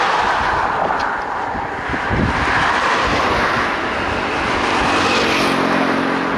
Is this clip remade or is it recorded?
recorded